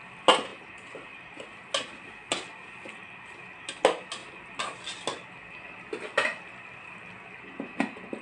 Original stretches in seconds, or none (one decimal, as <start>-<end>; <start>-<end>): 0.0-8.2